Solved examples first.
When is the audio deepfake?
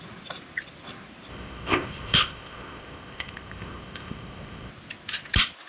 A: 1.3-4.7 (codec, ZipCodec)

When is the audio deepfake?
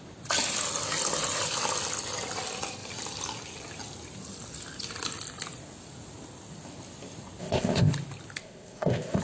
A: 7.4-7.9 (codec, ZipCodec); 8.4-9.2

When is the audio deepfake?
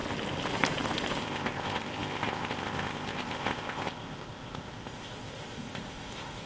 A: 1.2-6.5 (codec, ZipCodec)